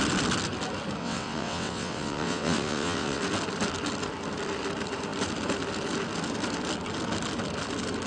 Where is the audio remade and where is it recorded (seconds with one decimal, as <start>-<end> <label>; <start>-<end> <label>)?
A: 0.0-1.0 recorded; 1.0-3.2 remade; 3.2-8.1 recorded